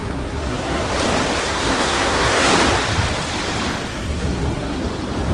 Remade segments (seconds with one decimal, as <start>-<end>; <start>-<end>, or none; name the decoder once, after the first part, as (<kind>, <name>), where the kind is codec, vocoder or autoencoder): 0.0-0.9 (codec, SNAC); 1.4-2.5; 3.9-4.8